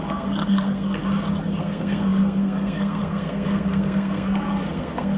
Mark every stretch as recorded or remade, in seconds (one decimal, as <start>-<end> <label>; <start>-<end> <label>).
0.0-1.0 remade; 1.0-1.6 recorded; 1.6-5.2 remade